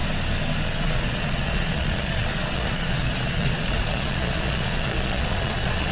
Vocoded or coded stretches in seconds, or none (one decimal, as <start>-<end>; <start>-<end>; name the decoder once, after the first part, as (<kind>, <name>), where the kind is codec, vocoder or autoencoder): 0.8-5.9 (vocoder, Vocos)